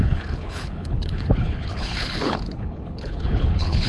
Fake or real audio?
fake